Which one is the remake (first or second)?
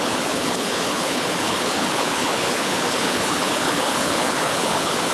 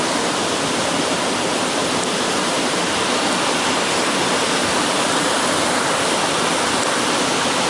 first